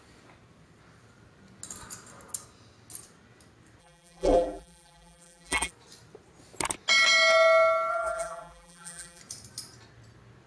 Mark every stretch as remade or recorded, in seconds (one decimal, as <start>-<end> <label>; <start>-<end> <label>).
0.0-3.8 recorded; 3.8-5.7 remade; 5.7-7.9 recorded; 7.9-9.2 remade; 9.2-10.5 recorded